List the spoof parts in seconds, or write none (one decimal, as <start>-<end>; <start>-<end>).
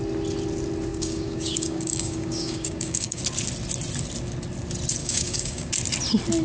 0.9-3.2; 5.0-5.7